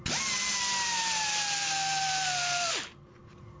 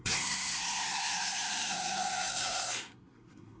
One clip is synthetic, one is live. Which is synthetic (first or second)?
second